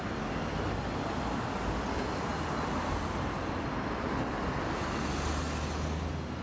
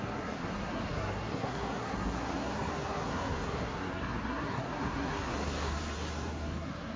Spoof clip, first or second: second